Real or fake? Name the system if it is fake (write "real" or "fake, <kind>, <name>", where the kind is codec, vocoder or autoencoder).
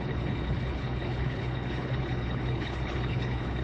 fake, codec, HILCodec